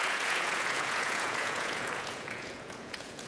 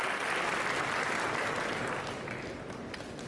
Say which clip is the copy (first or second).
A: first